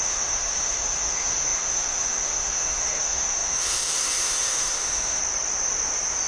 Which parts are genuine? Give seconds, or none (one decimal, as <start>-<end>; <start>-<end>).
5.2-6.3